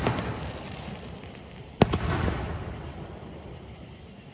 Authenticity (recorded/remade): remade